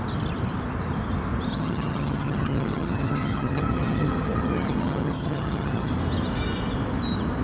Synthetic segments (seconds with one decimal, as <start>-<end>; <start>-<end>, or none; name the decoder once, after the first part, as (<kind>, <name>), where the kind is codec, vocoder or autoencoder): 1.5-5.9 (vocoder, HiFi-GAN)